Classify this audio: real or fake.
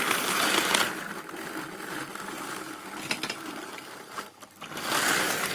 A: real